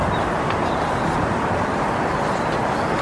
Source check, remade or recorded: recorded